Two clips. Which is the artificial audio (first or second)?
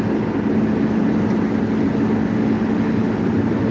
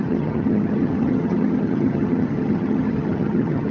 second